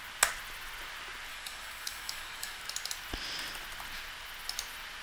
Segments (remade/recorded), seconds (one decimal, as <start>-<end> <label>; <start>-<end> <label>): 0.0-1.3 recorded; 1.3-2.6 remade; 2.6-5.0 recorded